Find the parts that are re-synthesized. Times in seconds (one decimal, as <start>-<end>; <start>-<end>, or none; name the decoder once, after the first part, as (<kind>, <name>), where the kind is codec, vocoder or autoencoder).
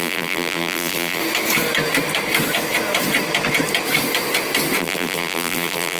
0.0-1.2 (vocoder, BigVGAN v2); 4.8-6.0